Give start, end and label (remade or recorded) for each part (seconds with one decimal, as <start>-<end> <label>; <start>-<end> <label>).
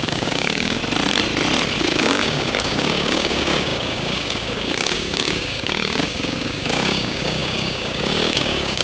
0.0-0.8 remade; 0.8-1.8 recorded; 1.8-8.8 remade